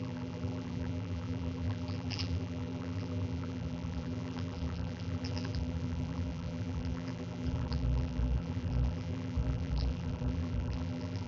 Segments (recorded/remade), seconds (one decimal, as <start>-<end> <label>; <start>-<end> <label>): 0.0-11.3 remade